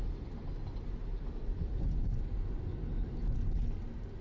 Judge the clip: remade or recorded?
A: recorded